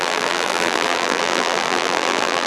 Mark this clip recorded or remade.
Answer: remade